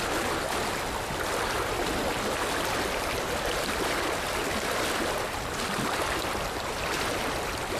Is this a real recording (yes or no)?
yes